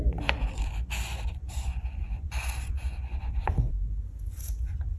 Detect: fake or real fake